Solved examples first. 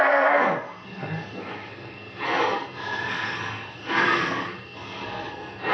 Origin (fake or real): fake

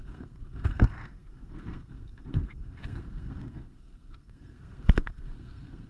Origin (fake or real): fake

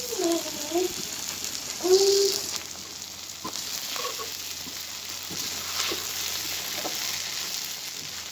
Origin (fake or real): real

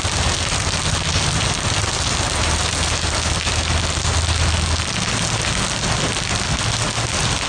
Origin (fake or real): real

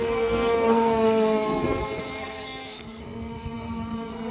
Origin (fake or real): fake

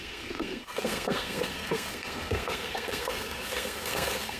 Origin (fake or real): fake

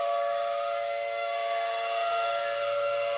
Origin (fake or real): fake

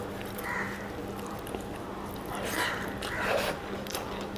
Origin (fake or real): real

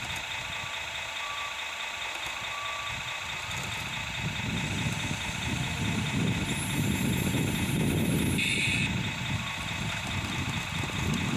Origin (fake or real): real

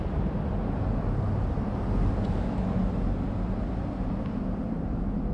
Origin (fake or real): real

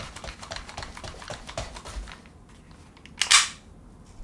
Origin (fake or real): real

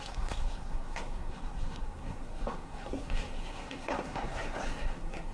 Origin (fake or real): fake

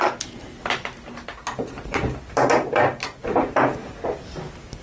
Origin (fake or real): real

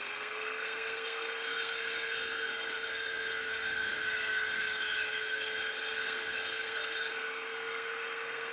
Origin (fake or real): fake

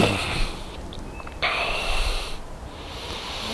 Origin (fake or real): real